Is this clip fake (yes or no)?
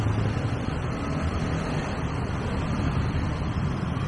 yes